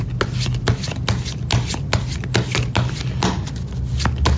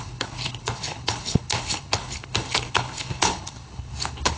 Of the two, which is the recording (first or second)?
first